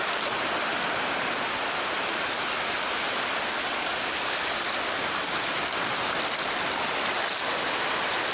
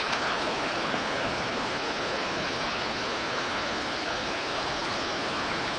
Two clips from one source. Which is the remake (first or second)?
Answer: second